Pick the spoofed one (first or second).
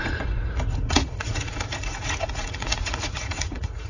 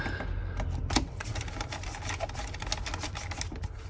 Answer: first